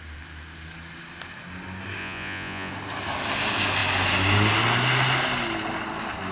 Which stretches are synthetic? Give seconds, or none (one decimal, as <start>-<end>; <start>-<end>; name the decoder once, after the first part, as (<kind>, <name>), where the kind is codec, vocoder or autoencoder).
2.0-2.7 (vocoder, Vocos)